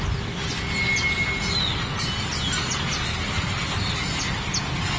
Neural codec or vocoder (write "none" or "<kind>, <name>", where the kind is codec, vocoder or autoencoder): none